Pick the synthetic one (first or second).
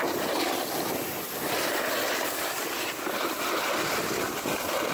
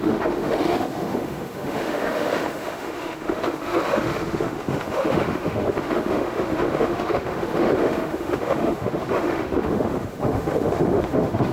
second